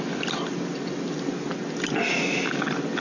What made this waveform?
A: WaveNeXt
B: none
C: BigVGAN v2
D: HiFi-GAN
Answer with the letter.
B